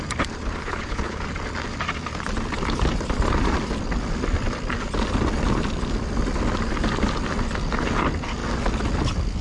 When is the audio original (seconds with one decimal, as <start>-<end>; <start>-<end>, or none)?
0.0-0.6; 1.2-9.4